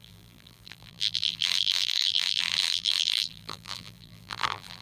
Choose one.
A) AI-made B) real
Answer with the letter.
A